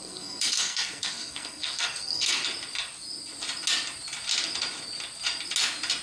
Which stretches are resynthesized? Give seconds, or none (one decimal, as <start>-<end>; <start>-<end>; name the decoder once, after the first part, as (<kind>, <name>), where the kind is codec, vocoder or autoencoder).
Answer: 0.0-2.4 (codec, SNAC)